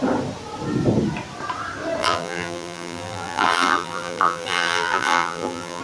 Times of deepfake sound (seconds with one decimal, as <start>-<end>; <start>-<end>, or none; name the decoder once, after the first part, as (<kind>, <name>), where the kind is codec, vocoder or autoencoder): 2.0-5.8 (vocoder, BigVGAN v2)